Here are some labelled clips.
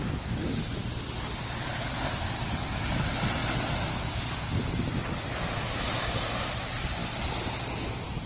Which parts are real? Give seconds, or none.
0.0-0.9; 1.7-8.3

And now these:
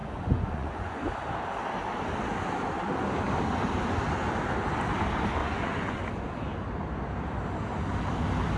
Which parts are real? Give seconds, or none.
1.0-5.4; 6.0-8.6

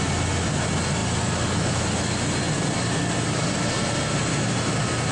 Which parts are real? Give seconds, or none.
0.0-5.1

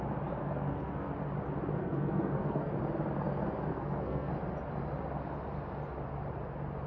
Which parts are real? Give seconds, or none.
0.0-0.4; 1.1-1.8; 2.7-3.7; 4.3-6.9

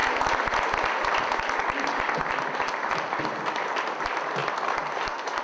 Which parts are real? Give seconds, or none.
0.0-4.4

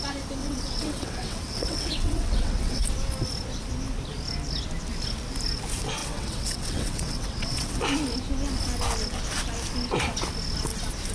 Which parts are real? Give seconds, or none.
0.0-0.4; 2.8-6.0; 7.8-11.1

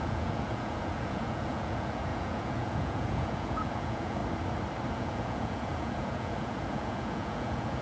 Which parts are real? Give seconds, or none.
4.2-4.9

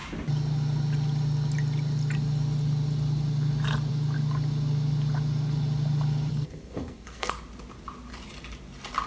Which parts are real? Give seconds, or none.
0.0-6.3; 7.3-9.1